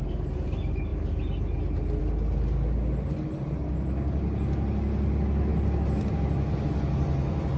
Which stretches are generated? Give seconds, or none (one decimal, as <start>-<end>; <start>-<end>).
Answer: none